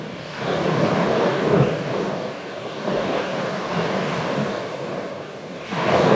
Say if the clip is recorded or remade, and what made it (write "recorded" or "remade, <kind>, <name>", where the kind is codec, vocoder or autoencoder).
remade, codec, DAC